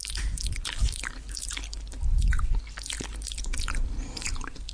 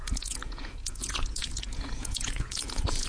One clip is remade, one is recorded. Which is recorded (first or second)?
first